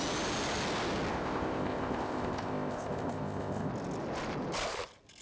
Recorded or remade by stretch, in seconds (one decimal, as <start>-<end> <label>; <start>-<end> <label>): 0.0-1.1 recorded; 1.1-3.7 remade; 3.7-5.2 recorded

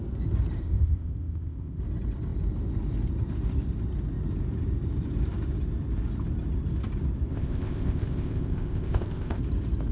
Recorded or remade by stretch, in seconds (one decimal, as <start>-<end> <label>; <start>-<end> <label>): 0.0-0.6 recorded; 0.6-1.8 remade; 1.8-7.3 recorded; 7.3-9.4 remade; 9.4-9.9 recorded

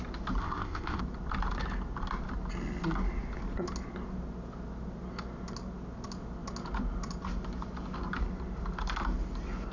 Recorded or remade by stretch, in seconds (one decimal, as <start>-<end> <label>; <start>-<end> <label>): 0.0-0.4 recorded; 0.4-1.0 remade; 1.0-9.7 recorded

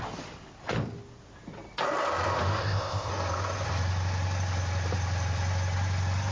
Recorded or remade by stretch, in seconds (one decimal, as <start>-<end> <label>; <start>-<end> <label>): 0.0-2.6 recorded; 2.6-3.1 remade; 3.1-6.3 recorded

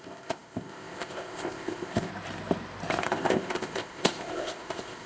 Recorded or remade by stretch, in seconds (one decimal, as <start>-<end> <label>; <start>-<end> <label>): 0.0-2.1 remade; 2.1-3.0 recorded; 3.0-5.1 remade